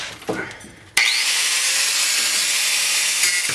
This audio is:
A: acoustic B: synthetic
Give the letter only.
A